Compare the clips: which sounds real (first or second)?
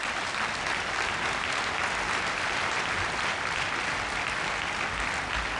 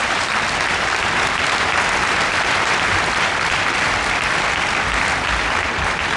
first